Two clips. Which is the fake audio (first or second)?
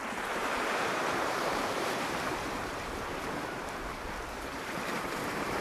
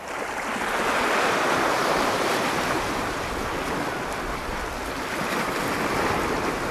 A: first